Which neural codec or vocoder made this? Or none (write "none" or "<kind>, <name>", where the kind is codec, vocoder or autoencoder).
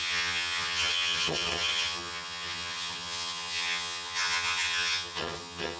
vocoder, HiFi-GAN